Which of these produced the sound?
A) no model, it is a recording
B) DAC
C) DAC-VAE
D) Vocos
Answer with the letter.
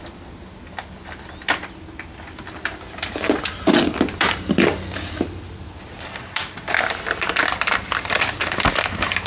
A